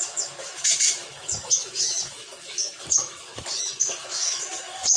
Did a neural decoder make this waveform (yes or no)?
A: yes